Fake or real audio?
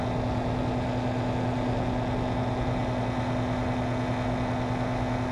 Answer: real